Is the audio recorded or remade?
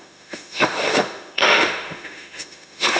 remade